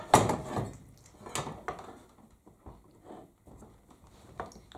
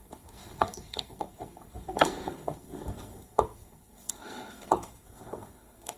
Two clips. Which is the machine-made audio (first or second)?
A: second